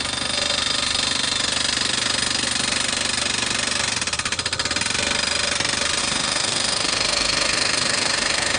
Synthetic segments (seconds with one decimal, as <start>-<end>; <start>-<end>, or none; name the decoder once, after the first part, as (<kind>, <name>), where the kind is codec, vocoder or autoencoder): 6.0-8.6 (autoencoder, DAC-VAE)